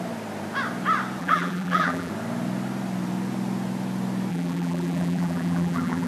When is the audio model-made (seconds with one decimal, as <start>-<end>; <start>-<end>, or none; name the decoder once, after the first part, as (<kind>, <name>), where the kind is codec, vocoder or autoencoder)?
1.2-2.1 (vocoder, BigVGAN v2); 4.3-6.1